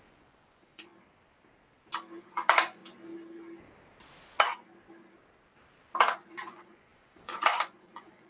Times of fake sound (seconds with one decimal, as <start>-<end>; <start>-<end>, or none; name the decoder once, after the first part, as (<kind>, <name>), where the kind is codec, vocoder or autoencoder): 0.0-0.9 (vocoder, Vocos); 2.2-2.8; 6.3-8.3